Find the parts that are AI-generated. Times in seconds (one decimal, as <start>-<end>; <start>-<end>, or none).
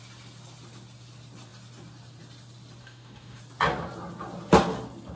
2.8-3.4